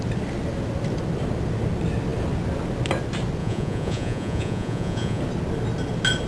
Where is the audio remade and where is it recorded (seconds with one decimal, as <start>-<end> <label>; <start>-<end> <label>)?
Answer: 0.0-3.4 recorded; 3.4-5.2 remade; 5.2-6.3 recorded